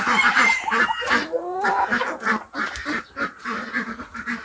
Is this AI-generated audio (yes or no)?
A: yes